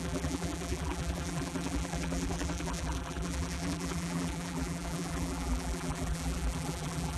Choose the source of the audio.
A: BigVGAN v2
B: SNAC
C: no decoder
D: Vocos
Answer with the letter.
A